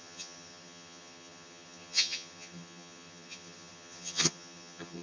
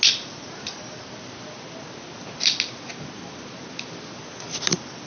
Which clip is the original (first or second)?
second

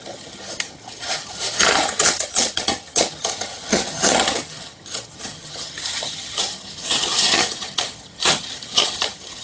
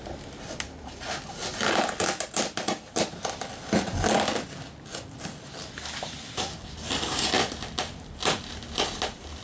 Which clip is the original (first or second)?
second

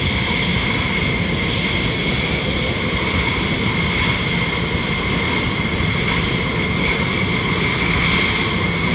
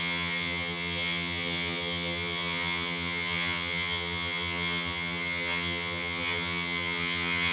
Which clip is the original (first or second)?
first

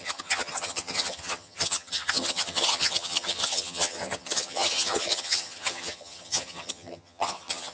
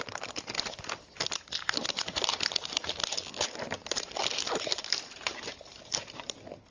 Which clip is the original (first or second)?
second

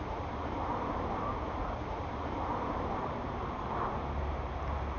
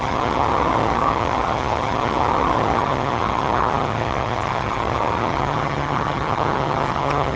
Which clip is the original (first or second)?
first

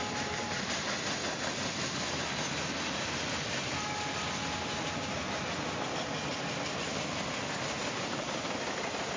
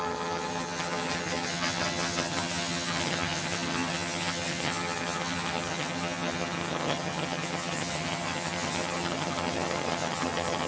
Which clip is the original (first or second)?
first